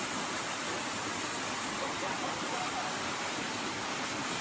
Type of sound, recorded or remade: recorded